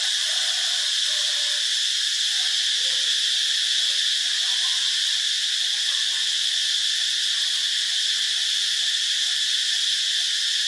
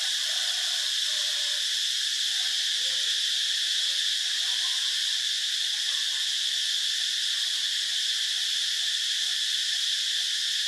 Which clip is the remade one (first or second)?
second